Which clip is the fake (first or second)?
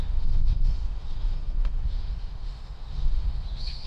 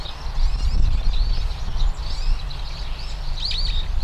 first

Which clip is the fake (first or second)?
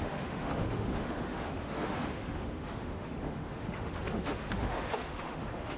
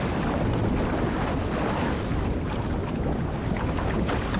first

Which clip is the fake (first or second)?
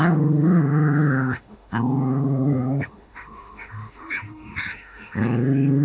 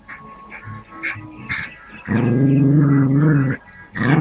first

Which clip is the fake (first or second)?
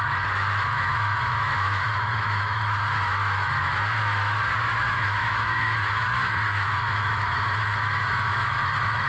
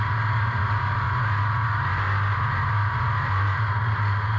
first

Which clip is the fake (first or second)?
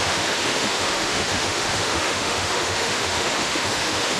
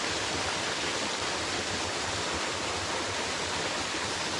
first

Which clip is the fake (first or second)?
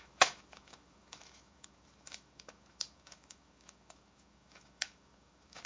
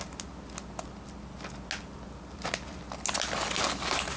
first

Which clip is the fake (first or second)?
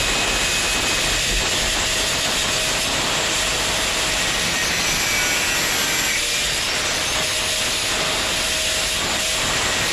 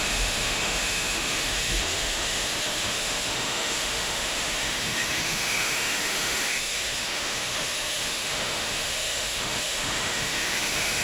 second